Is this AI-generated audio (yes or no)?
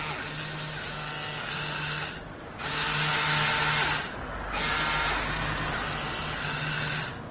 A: no